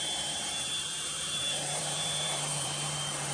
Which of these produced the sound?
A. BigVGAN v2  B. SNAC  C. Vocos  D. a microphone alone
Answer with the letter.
A